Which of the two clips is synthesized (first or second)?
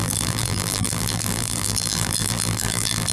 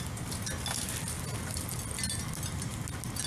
first